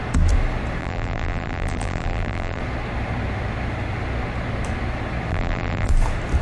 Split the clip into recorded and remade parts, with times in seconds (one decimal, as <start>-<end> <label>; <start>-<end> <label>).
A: 0.0-0.8 recorded; 0.8-2.6 remade; 2.6-5.3 recorded; 5.3-5.9 remade; 5.9-6.4 recorded